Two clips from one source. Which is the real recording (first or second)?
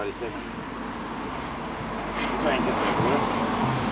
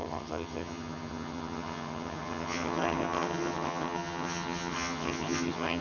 first